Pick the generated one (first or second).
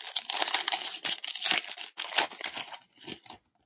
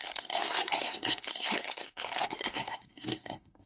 second